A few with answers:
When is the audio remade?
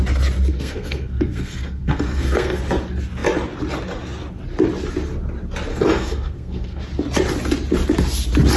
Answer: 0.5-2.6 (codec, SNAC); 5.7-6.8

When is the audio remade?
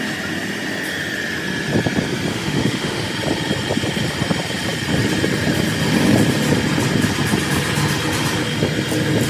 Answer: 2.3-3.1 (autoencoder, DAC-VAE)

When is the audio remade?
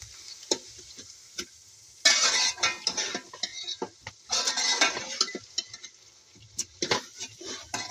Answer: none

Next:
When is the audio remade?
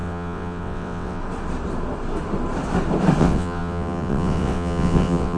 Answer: 0.0-1.2 (vocoder, WaveNeXt); 3.2-5.4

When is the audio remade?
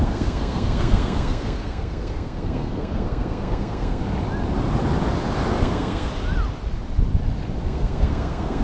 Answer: 0.0-4.0 (codec, SNAC); 5.6-6.1; 7.6-8.6